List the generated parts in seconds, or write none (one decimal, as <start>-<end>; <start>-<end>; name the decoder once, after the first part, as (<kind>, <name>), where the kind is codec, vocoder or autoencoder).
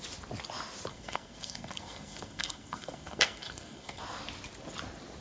0.9-4.0 (codec, SNAC)